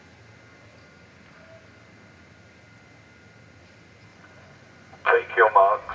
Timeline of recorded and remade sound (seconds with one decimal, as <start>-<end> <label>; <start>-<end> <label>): 0.0-4.1 recorded; 4.1-5.3 remade; 5.3-5.9 recorded